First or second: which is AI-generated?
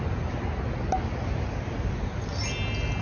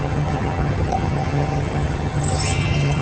second